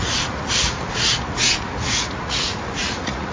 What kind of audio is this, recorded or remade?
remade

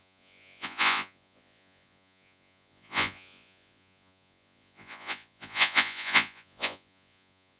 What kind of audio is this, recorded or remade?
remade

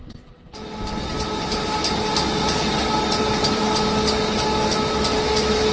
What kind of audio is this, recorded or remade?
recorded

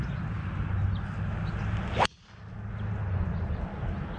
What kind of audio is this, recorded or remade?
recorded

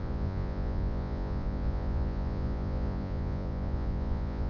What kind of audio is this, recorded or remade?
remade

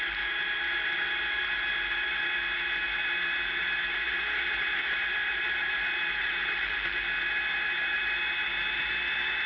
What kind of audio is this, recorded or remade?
recorded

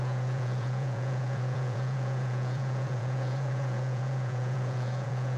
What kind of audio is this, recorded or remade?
remade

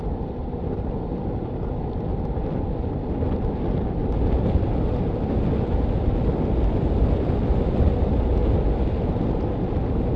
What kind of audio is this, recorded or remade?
recorded